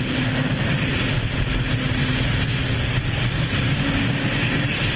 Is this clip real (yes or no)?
yes